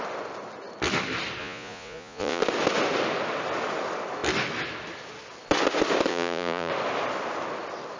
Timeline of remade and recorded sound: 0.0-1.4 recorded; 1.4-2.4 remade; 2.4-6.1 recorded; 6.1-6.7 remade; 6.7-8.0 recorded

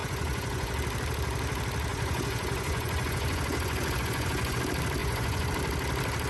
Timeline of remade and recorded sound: 0.0-0.7 remade; 0.7-1.9 recorded; 1.9-4.6 remade; 4.6-5.0 recorded; 5.0-5.5 remade; 5.5-6.3 recorded

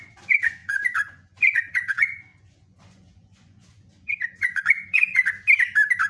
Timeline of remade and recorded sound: 0.0-5.3 remade; 5.3-6.1 recorded

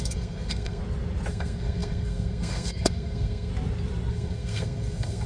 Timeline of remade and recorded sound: 0.0-0.8 remade; 0.8-1.3 recorded; 1.3-3.5 remade; 3.5-4.1 recorded; 4.1-5.3 remade

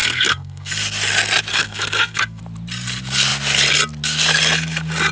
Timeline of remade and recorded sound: 0.0-0.7 remade; 0.7-1.5 recorded; 1.5-2.4 remade; 2.4-5.1 recorded